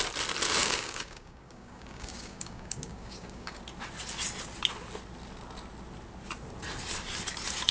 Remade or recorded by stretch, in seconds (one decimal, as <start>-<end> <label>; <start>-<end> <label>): 0.0-0.6 recorded; 0.6-3.6 remade; 3.6-7.7 recorded